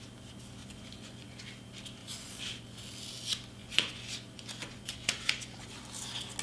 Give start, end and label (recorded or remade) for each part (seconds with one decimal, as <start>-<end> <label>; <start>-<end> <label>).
0.0-0.6 recorded; 0.6-1.4 remade; 1.4-2.0 recorded; 2.0-2.8 remade; 2.8-3.6 recorded; 3.6-5.8 remade; 5.8-6.4 recorded